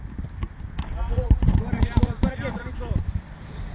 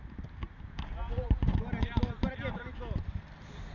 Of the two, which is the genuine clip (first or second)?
second